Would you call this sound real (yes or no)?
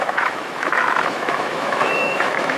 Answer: no